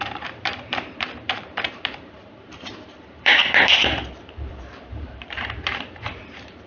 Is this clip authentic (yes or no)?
no